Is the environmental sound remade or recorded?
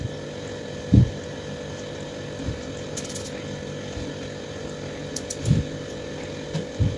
recorded